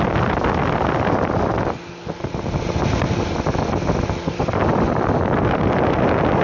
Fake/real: real